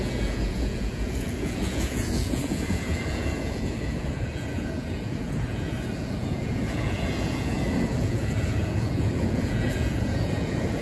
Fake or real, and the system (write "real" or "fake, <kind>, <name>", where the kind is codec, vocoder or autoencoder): fake, vocoder, Vocos